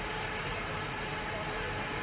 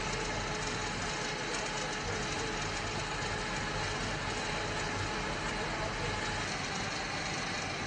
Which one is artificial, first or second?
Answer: first